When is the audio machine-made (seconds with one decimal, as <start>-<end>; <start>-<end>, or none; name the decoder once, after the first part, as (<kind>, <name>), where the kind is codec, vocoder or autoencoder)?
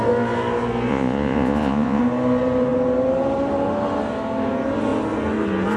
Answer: 0.9-2.0 (vocoder, Vocos)